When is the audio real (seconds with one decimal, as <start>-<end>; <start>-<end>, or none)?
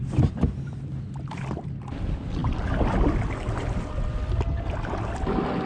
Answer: 0.0-5.7